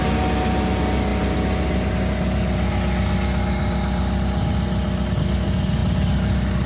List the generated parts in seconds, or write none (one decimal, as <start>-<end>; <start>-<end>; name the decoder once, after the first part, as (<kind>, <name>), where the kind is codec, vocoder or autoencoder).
none